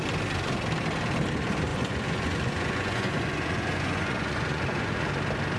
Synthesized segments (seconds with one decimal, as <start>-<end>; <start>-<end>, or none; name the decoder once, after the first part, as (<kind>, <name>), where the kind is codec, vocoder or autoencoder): 1.7-5.1 (vocoder, Vocos)